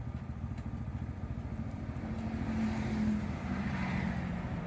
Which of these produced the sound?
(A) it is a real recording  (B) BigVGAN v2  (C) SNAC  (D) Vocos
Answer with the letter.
A